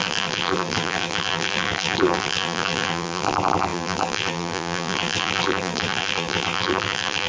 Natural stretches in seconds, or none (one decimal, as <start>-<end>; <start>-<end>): none